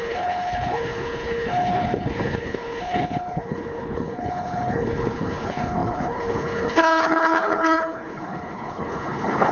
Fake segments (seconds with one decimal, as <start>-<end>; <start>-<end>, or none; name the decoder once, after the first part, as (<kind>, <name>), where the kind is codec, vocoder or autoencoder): 0.0-9.5 (codec, HILCodec)